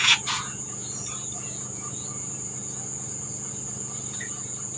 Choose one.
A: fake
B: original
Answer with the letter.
A